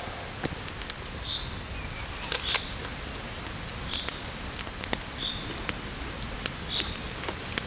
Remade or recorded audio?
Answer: recorded